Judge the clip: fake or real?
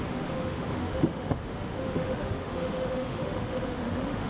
fake